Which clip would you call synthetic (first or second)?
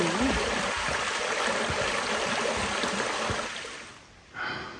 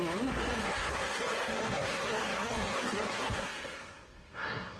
second